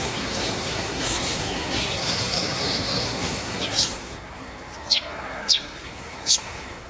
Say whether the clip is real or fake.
fake